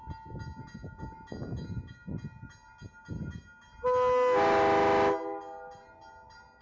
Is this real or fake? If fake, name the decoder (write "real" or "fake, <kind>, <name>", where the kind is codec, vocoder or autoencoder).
real